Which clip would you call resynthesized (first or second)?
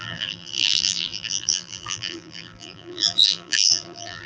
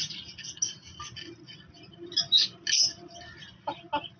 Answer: first